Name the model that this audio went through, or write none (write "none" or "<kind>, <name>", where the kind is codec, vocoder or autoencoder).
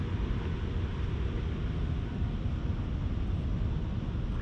none